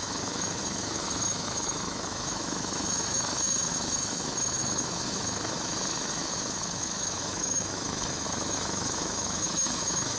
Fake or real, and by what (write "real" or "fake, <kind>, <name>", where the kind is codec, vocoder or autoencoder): fake, autoencoder, DAC-VAE